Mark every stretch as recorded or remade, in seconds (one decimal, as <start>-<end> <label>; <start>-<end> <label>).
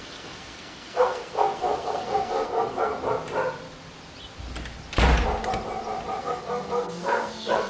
0.0-2.9 remade; 2.9-6.2 recorded; 6.2-7.7 remade